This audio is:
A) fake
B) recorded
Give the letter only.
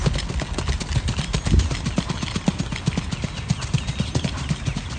B